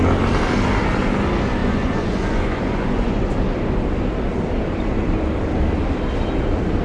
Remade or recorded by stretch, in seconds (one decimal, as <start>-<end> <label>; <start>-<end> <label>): 0.0-1.6 recorded; 1.6-3.2 remade; 3.2-6.8 recorded